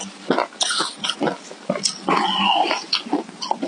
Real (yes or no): yes